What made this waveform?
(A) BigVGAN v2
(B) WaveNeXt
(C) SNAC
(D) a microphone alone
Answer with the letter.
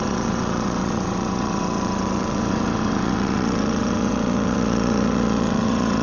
B